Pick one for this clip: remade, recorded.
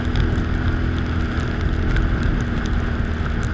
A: recorded